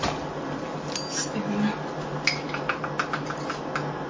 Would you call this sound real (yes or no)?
yes